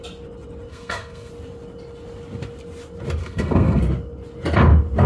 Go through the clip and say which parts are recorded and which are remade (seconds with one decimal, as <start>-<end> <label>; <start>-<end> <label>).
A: 0.0-0.7 recorded; 0.7-1.3 remade; 1.3-3.2 recorded; 3.2-3.8 remade; 3.8-5.1 recorded